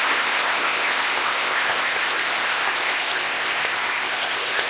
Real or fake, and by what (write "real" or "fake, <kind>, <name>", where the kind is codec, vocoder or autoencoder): fake, codec, ZipCodec